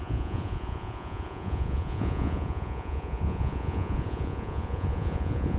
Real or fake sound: fake